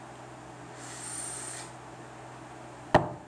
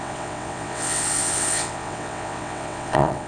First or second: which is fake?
second